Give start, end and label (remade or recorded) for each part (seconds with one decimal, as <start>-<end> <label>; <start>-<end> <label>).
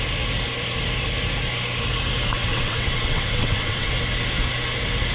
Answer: 0.0-2.5 recorded; 2.5-3.9 remade; 3.9-5.1 recorded